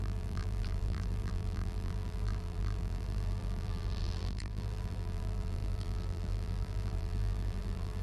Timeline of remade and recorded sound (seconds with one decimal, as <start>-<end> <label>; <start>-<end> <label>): 0.0-8.0 remade